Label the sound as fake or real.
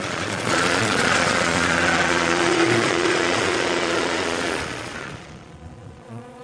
fake